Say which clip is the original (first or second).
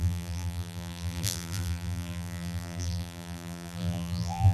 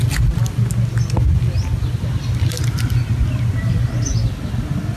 second